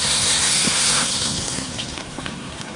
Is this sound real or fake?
fake